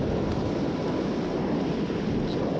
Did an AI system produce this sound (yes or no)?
no